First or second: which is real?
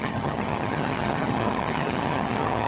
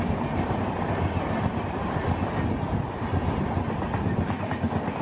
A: second